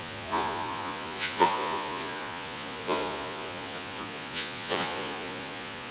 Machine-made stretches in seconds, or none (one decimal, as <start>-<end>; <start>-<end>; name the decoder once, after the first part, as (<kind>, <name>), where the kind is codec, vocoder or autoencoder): 0.0-5.9 (vocoder, Vocos)